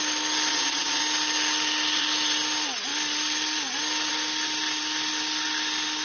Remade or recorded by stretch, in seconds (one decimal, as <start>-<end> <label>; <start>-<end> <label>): 0.0-0.5 recorded; 0.5-1.0 remade; 1.0-6.0 recorded

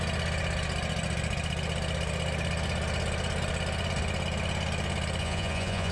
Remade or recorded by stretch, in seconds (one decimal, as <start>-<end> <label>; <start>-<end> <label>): 0.0-5.2 recorded; 5.2-5.9 remade

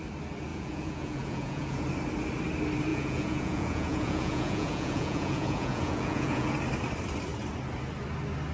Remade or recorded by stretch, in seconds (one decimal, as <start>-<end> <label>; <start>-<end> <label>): 0.0-0.5 recorded; 0.5-1.8 remade; 1.8-2.9 recorded; 2.9-6.5 remade; 6.5-8.5 recorded

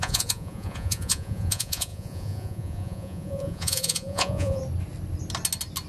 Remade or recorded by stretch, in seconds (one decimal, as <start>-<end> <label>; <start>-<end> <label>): 0.0-4.6 remade; 4.6-5.9 recorded

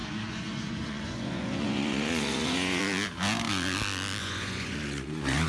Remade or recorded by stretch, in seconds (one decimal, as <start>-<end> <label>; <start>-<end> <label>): 0.0-2.8 remade; 2.8-4.2 recorded; 4.2-5.5 remade

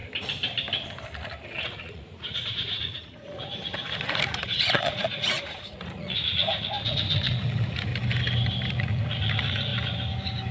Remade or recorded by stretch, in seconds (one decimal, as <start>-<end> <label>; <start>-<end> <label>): 0.0-1.6 recorded; 1.6-7.9 remade; 7.9-8.7 recorded; 8.7-9.7 remade; 9.7-10.5 recorded

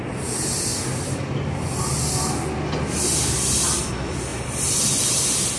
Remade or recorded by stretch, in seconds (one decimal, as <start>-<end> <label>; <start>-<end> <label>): 0.0-5.6 recorded

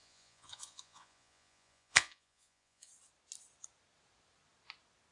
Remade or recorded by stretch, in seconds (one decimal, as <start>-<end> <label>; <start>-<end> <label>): 0.0-2.9 remade; 2.9-5.1 recorded